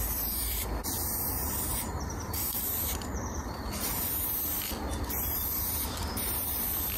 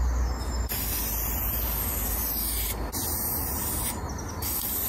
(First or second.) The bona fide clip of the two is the second